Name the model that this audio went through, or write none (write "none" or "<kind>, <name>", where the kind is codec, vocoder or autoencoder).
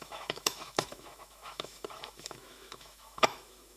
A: autoencoder, DAC-VAE